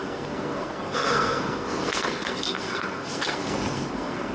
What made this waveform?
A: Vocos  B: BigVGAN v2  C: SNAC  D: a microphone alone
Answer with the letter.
C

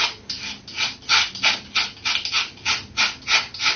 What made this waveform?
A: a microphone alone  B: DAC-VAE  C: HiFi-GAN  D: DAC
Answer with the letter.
A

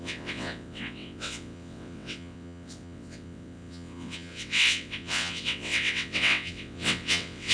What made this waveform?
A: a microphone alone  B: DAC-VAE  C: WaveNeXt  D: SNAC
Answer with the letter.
C